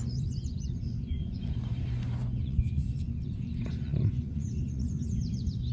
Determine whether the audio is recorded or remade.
remade